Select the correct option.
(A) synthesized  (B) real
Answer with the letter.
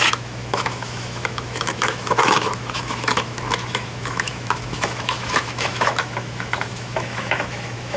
A